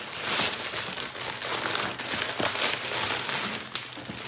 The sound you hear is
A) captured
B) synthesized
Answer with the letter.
A